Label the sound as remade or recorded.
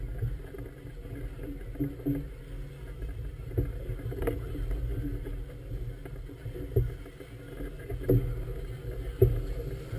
recorded